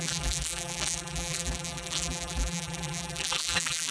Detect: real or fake fake